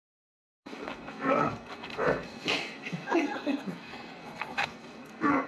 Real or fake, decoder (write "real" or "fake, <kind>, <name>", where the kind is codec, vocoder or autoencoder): fake, codec, SNAC